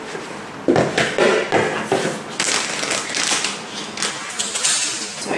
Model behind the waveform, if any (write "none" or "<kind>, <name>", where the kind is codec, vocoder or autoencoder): none